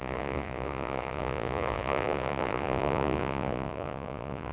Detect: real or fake fake